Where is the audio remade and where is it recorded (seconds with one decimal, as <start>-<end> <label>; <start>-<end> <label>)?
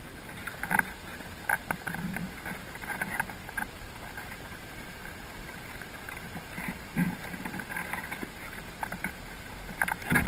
0.0-10.3 recorded